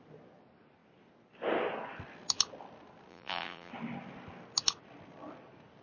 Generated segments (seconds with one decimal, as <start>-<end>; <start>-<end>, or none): 3.1-3.7